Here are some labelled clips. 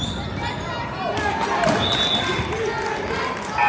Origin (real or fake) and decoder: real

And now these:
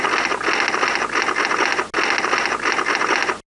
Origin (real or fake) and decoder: real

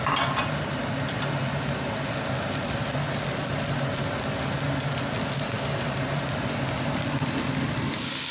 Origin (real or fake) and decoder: real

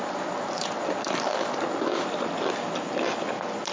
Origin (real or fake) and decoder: real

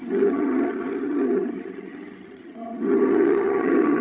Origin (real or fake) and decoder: fake, vocoder, HiFi-GAN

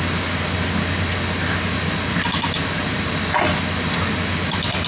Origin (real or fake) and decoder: real